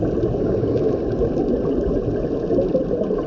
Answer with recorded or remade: recorded